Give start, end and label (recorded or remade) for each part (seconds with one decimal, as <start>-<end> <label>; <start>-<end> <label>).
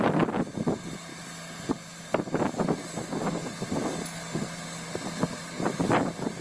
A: 0.0-6.4 recorded